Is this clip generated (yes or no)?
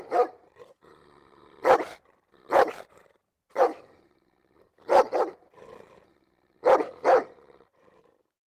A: yes